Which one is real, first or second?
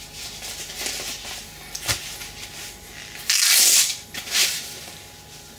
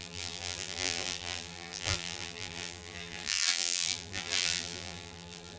first